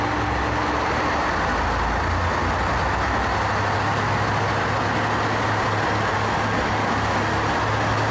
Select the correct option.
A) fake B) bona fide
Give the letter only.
B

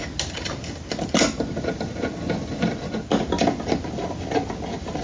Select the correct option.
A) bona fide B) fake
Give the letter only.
A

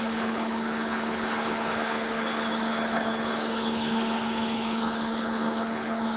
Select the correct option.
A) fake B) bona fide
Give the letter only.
A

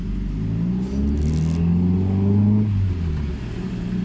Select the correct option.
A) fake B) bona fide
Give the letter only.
B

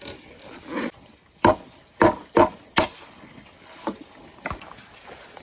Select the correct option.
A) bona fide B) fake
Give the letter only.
A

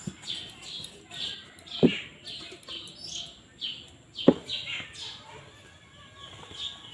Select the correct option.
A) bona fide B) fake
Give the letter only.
A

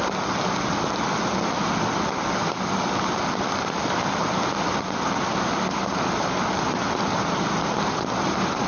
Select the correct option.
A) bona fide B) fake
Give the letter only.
A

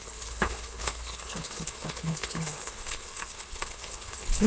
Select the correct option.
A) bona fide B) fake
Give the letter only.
B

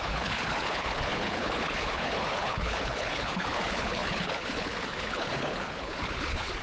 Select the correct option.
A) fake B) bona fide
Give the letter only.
A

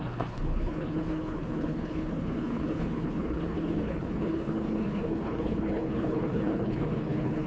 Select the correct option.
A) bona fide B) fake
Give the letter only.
B